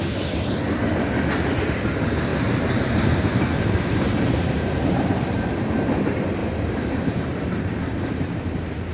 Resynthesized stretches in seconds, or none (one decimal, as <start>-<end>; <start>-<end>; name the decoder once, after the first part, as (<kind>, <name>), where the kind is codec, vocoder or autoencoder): 2.3-2.9 (vocoder, BigVGAN v2); 3.5-6.0; 6.4-8.9